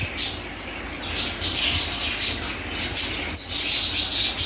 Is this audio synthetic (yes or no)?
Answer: no